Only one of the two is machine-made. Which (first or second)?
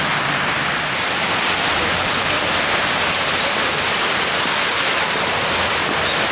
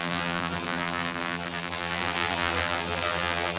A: second